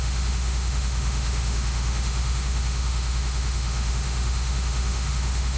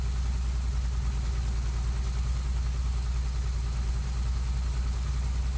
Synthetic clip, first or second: first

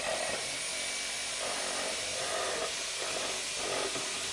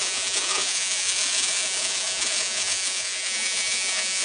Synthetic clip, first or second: second